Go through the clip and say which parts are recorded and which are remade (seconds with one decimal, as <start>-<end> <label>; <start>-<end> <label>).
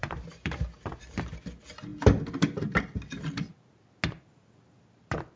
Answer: 0.0-1.0 remade; 1.0-5.4 recorded